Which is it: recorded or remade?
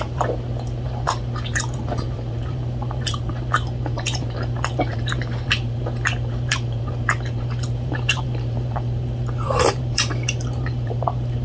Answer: remade